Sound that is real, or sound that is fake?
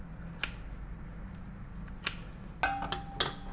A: real